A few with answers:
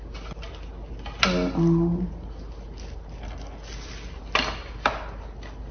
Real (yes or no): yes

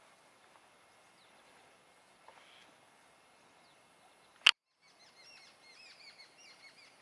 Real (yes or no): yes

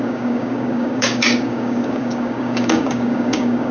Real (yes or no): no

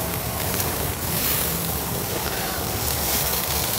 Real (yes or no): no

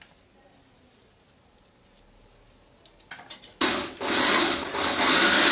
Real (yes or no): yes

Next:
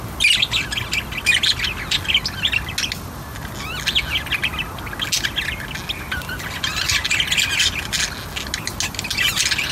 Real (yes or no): yes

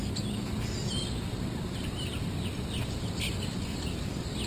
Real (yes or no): yes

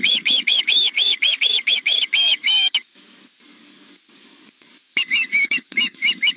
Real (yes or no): no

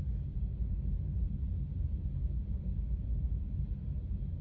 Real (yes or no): yes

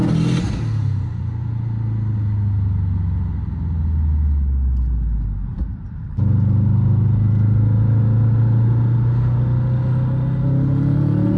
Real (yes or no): yes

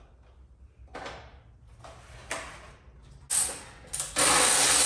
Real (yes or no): yes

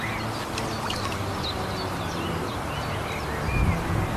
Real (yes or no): yes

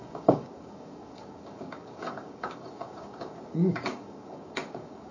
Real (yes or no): no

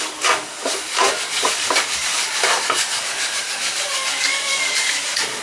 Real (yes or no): no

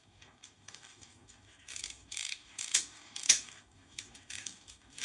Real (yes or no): no